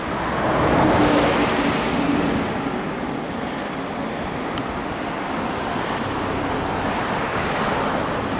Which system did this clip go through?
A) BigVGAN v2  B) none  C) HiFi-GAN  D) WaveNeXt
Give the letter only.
B